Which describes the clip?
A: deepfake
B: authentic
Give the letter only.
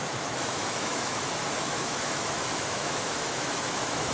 A